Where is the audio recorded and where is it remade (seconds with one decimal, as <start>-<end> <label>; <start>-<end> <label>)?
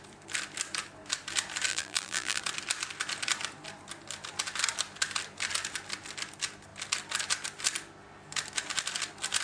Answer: 0.0-1.7 recorded; 1.7-2.4 remade; 2.4-9.4 recorded